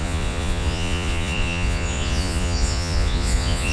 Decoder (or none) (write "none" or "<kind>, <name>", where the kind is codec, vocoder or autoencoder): vocoder, Vocos